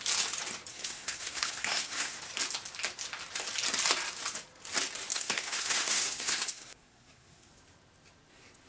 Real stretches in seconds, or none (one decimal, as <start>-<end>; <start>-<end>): 0.0-0.7; 2.2-5.1; 7.5-8.7